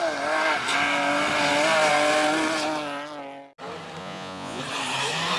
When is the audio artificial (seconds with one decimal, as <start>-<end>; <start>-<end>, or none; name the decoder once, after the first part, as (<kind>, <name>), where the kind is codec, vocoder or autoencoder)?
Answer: 4.0-4.6 (vocoder, Vocos)

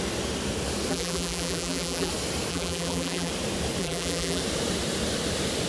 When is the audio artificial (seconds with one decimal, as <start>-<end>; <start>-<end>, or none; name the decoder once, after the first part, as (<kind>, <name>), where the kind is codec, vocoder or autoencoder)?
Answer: 0.9-2.1 (vocoder, BigVGAN v2); 2.5-3.3; 3.8-4.4

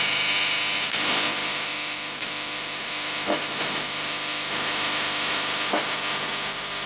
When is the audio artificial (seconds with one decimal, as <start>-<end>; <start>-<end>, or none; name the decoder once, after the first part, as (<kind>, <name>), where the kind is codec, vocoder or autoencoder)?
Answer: 1.4-5.5 (autoencoder, DAC-VAE)

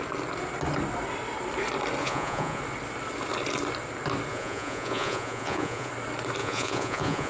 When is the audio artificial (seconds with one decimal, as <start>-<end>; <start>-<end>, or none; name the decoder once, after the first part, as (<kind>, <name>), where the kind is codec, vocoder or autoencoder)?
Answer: 2.0-2.6 (vocoder, Vocos); 4.3-5.9; 6.4-7.3

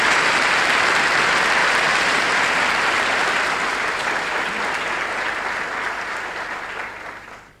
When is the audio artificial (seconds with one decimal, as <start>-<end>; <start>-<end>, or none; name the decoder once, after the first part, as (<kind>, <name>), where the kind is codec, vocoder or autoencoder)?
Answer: 1.6-2.2 (vocoder, BigVGAN v2)

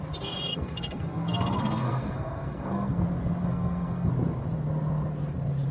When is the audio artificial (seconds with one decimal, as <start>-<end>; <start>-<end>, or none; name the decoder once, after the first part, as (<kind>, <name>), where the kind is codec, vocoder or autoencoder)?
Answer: 0.5-3.0 (codec, SNAC); 3.4-4.1

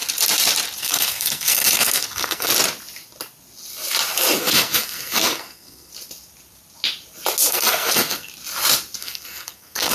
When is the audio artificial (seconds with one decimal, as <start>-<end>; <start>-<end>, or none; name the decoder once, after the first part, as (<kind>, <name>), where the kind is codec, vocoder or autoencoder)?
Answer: 0.8-2.5 (codec, SNAC); 4.4-5.9; 7.5-8.3; 9.0-9.9

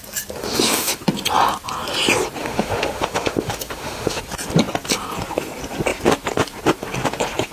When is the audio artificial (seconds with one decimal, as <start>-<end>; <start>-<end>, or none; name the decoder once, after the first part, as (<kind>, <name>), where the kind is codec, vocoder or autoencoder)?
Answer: 0.4-1.0 (autoencoder, DAC-VAE); 2.4-4.2